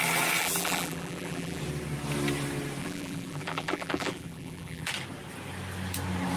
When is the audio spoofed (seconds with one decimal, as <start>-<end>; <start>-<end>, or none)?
0.4-1.6; 2.8-4.9